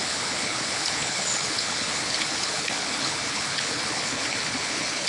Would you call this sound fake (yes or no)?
yes